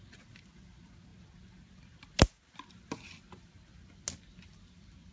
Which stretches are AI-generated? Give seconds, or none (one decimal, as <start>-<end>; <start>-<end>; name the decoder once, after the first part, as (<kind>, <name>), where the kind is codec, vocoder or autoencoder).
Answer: none